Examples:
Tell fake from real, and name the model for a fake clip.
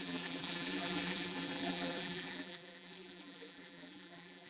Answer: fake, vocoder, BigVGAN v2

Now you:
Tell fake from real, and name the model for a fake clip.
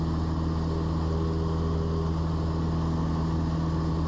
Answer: real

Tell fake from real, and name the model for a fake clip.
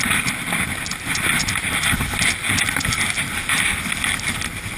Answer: real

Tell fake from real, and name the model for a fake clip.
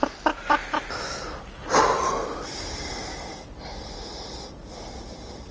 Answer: real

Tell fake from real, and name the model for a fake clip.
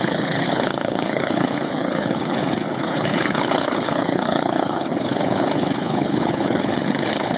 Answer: fake, codec, HILCodec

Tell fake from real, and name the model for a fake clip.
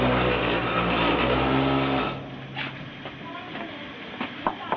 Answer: fake, vocoder, BigVGAN v2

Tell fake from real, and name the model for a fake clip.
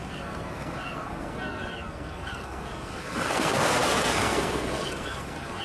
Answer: fake, codec, SNAC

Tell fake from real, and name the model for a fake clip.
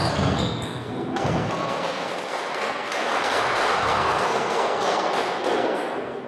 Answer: fake, codec, SNAC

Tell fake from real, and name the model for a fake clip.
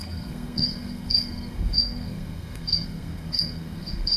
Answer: fake, codec, SNAC